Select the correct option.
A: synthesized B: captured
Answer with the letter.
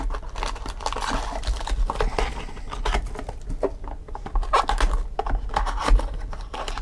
B